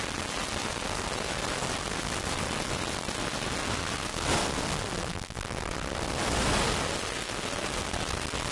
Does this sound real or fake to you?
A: real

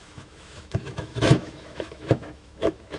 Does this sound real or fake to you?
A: fake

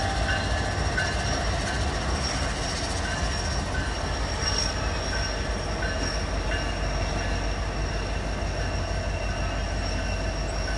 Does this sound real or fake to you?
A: real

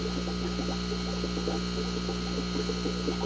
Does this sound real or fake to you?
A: real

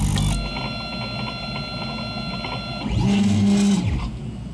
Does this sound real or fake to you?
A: real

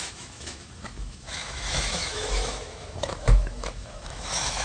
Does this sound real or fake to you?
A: fake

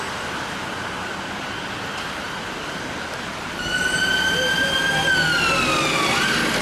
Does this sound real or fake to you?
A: real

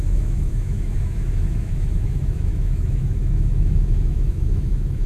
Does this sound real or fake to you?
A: fake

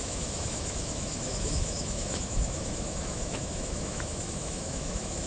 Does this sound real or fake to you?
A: fake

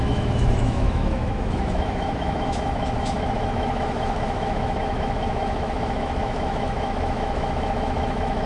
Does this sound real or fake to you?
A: fake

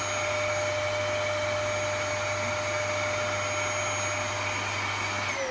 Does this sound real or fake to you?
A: real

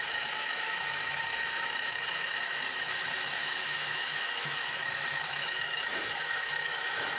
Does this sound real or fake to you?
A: fake